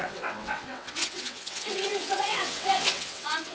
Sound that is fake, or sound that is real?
fake